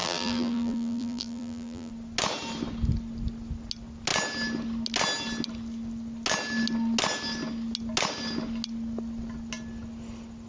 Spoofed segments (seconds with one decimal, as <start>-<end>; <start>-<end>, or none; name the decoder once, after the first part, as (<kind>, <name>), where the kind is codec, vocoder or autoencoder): 0.0-1.9 (vocoder, BigVGAN v2)